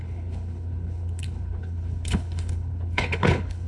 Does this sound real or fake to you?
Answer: fake